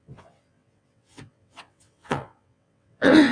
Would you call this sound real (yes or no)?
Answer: no